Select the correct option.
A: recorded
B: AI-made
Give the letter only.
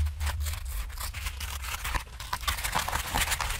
B